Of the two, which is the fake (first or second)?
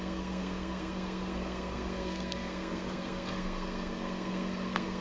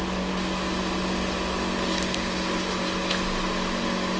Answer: first